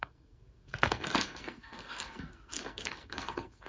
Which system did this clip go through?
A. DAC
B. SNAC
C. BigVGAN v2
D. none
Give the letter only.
B